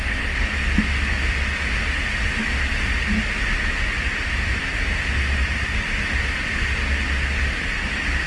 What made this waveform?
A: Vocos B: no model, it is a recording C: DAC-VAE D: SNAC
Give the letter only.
B